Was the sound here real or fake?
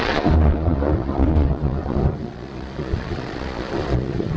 fake